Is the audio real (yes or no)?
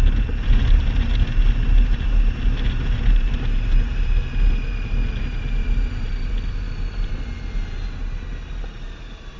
yes